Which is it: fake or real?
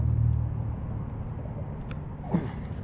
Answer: real